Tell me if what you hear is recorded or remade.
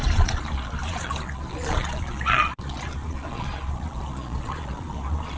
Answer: remade